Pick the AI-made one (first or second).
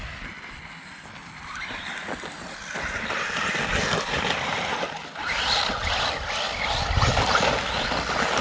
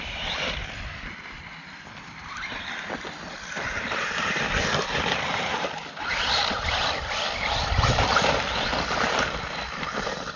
second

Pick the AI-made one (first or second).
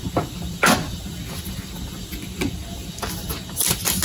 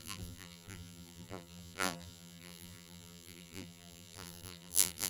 second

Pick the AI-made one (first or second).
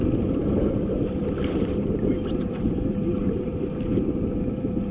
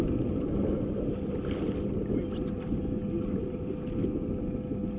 first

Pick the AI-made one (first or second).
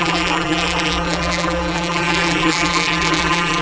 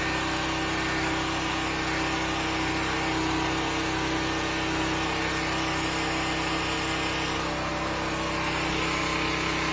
first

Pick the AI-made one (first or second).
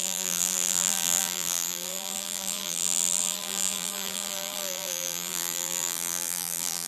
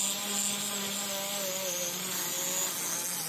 first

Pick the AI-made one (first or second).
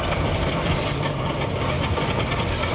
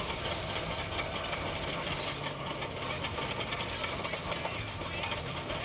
first